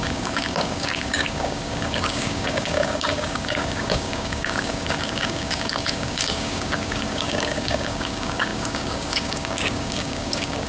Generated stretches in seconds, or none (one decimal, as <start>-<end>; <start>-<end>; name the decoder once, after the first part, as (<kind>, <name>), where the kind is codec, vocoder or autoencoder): 0.0-10.7 (codec, DAC)